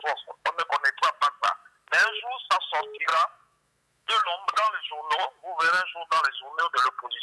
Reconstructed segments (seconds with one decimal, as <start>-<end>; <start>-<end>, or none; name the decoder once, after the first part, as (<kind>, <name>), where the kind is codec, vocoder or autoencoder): 0.0-0.7 (autoencoder, DAC-VAE); 3.1-6.2